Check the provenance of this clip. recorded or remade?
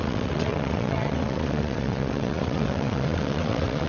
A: remade